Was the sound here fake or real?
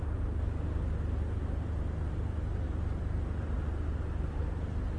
real